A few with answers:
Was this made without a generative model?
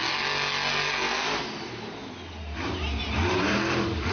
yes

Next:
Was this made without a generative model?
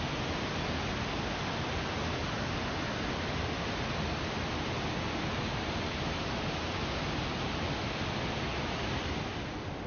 yes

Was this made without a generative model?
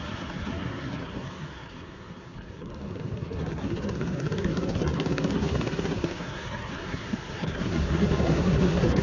no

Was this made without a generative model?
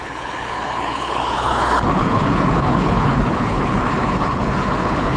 no